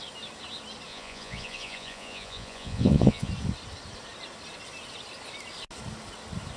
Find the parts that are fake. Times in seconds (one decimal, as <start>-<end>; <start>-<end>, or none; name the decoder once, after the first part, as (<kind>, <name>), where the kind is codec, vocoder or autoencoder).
0.9-3.3 (vocoder, Vocos)